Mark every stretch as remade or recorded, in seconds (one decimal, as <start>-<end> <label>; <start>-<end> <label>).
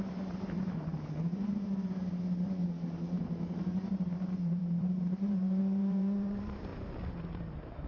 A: 0.0-2.6 remade; 2.6-3.2 recorded; 3.2-7.9 remade